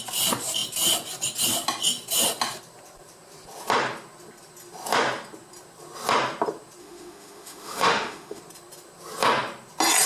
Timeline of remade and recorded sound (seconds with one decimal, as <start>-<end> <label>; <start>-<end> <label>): 0.0-6.8 recorded; 6.8-8.4 remade; 8.4-10.1 recorded